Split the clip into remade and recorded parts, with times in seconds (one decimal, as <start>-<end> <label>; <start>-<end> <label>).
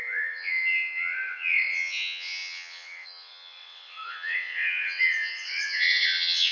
0.0-6.5 remade